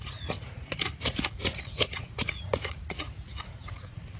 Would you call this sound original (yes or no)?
no